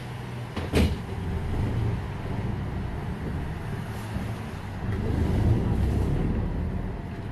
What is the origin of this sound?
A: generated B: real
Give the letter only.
B